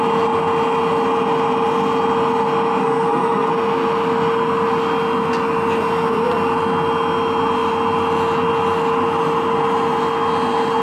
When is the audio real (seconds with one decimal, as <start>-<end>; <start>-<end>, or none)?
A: 0.0-2.8; 3.5-10.8